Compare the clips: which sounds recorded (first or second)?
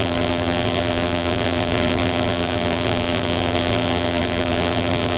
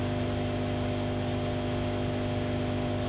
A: second